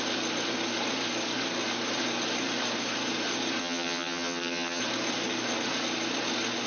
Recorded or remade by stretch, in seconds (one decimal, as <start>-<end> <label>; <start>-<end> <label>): 0.0-3.6 recorded; 3.6-4.8 remade; 4.8-6.7 recorded